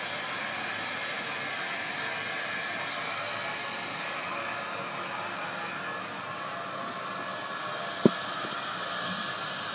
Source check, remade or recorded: recorded